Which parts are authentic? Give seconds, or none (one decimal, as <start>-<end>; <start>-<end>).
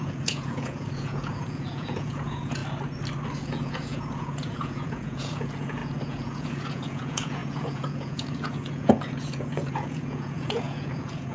2.6-3.4